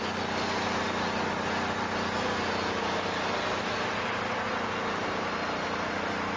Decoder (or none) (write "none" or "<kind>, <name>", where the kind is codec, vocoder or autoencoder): none